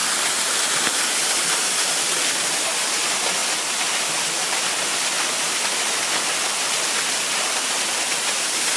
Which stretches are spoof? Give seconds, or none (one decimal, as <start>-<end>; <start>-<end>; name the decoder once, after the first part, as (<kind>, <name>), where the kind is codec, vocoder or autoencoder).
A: none